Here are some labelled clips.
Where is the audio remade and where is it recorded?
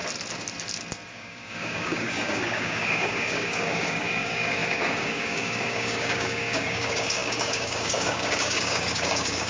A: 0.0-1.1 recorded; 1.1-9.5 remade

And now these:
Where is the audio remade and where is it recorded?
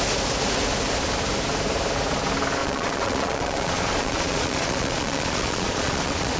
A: 0.0-2.6 recorded; 2.6-6.4 remade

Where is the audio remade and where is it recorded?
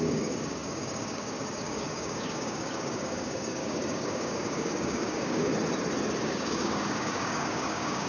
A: 0.0-5.5 remade; 5.5-6.2 recorded; 6.2-8.1 remade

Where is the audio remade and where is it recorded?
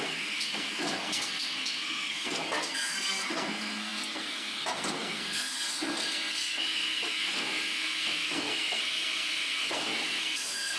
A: 0.0-10.8 remade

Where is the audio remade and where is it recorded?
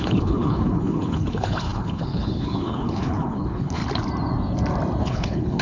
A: 0.0-3.8 remade; 3.8-5.0 recorded; 5.0-5.6 remade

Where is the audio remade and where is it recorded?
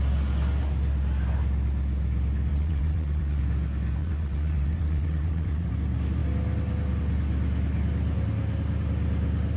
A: 0.0-2.5 recorded; 2.5-3.4 remade; 3.4-4.0 recorded; 4.0-5.7 remade; 5.7-9.6 recorded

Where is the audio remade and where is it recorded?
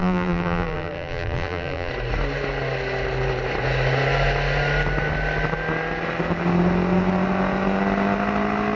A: 0.0-1.9 remade; 1.9-8.8 recorded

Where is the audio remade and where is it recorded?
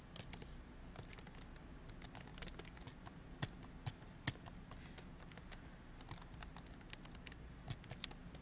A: 0.0-8.4 recorded